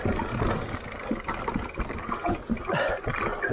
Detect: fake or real real